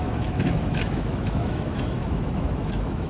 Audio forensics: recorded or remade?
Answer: remade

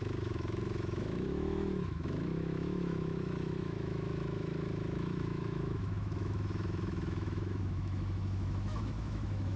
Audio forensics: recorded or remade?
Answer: remade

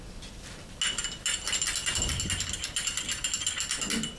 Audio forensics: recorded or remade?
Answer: recorded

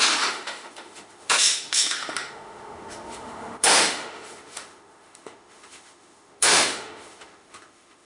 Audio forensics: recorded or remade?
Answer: remade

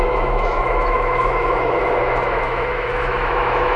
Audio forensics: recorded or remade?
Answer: remade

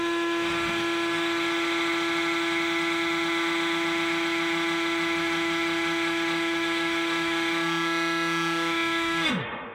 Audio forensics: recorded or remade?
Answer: remade